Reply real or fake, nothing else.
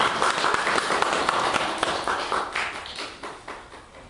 real